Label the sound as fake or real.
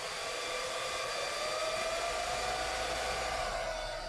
real